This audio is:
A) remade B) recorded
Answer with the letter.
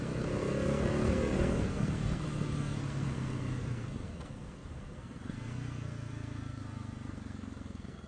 A